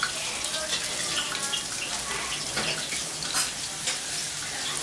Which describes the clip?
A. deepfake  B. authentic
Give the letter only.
B